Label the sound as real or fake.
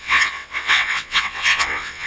fake